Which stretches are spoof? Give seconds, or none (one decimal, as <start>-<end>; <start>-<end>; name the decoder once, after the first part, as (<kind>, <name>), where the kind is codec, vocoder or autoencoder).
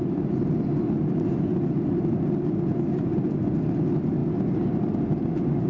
none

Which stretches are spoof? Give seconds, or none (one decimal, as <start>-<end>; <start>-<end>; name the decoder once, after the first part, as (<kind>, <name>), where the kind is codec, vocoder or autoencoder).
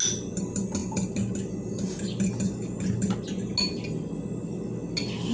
none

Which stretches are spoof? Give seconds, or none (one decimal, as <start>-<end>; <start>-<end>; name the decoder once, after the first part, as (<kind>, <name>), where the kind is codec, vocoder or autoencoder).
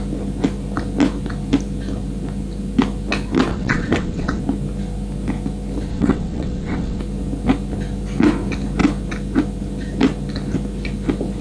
3.5-4.4 (vocoder, WaveNeXt); 5.9-7.0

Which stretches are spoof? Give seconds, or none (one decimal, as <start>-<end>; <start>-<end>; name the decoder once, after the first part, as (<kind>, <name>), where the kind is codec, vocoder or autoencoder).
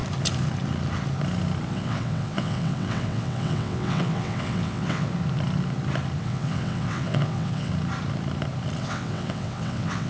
1.7-5.1 (vocoder, WaveNeXt); 6.2-7.7; 8.8-10.1